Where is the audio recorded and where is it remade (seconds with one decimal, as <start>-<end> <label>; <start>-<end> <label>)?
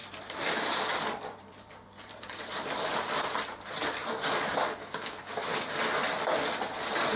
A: 0.0-4.1 remade; 4.1-7.2 recorded